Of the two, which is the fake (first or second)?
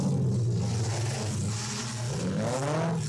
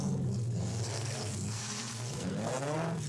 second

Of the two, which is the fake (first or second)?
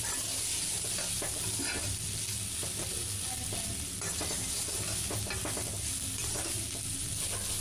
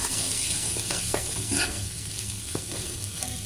second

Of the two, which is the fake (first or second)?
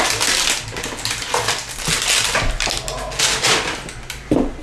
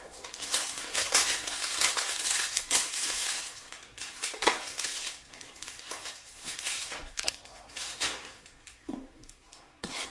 second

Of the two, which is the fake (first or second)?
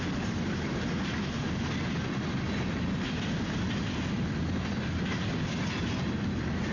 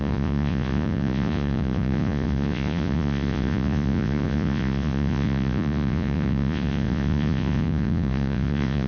second